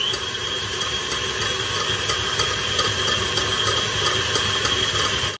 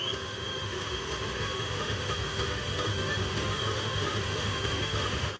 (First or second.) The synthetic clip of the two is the second